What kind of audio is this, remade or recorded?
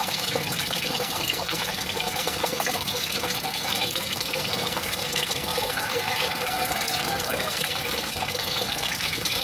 remade